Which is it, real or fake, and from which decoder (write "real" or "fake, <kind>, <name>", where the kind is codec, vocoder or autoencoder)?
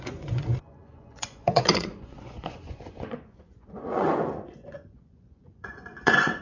fake, vocoder, Vocos